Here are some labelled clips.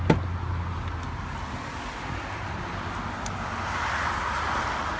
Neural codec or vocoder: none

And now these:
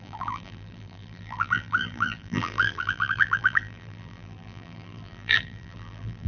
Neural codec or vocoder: vocoder, BigVGAN v2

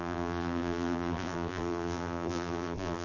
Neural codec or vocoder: vocoder, BigVGAN v2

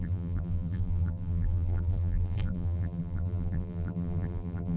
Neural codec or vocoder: vocoder, BigVGAN v2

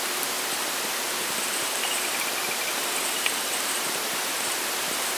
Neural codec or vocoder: vocoder, BigVGAN v2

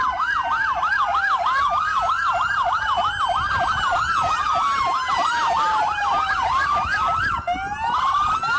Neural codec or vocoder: none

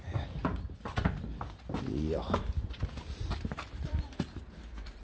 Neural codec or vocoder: vocoder, BigVGAN v2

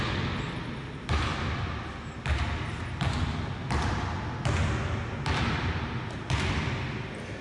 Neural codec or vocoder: none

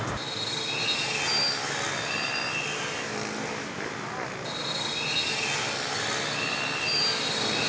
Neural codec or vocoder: none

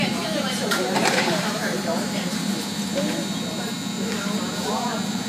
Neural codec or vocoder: vocoder, BigVGAN v2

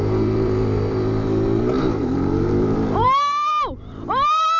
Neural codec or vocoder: vocoder, BigVGAN v2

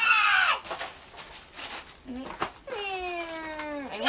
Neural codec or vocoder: none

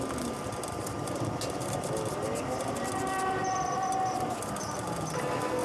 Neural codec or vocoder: none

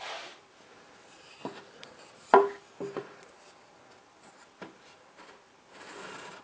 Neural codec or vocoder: none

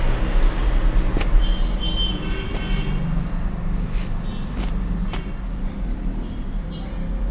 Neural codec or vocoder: none